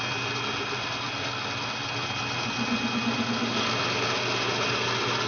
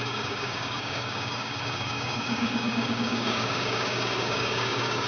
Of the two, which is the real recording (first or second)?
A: first